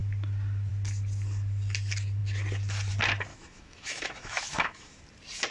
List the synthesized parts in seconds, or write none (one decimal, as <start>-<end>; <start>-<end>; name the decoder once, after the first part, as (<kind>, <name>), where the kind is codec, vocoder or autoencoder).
3.3-5.0 (autoencoder, DAC-VAE)